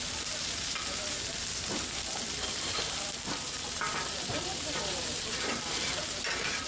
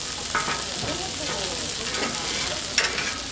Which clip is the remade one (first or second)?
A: first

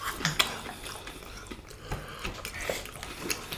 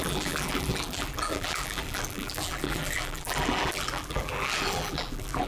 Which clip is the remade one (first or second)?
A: second